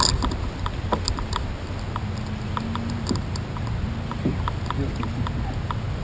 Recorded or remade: recorded